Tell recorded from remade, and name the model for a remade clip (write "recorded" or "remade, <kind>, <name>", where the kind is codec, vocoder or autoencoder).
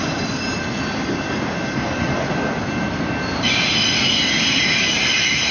recorded